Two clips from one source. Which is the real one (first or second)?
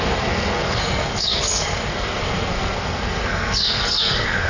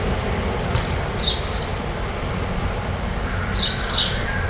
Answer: second